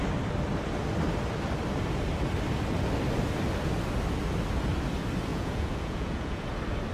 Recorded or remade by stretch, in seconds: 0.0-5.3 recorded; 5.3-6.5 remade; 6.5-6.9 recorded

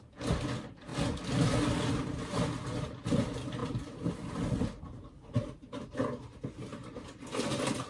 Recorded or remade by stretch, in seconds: 0.0-7.9 recorded

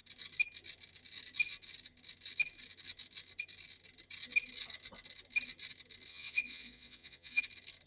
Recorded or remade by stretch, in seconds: 0.0-6.1 recorded; 6.1-7.4 remade; 7.4-7.9 recorded

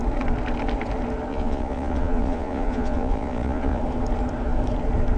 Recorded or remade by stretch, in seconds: 0.0-1.3 recorded; 1.3-3.8 remade; 3.8-5.2 recorded

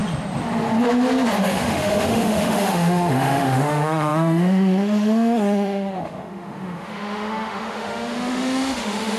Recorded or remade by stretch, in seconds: 0.0-1.5 recorded; 1.5-9.2 remade

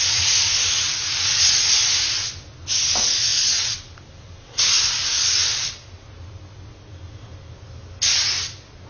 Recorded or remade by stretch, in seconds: 0.0-8.9 recorded